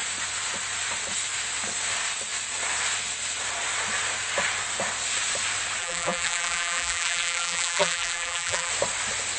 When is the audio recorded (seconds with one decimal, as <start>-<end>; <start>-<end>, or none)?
0.0-5.8; 8.7-9.4